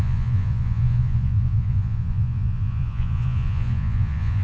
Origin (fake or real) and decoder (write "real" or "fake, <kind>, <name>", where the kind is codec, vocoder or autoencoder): fake, vocoder, Vocos